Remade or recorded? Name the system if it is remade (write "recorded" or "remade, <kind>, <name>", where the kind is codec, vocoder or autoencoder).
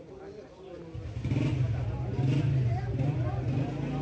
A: recorded